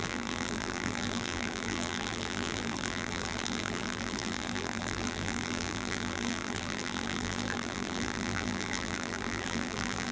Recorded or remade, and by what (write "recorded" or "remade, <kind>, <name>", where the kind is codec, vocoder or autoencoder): remade, vocoder, BigVGAN v2